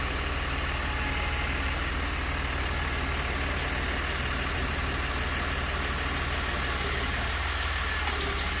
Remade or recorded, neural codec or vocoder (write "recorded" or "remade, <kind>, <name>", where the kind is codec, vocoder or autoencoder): recorded